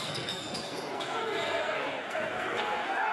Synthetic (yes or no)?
yes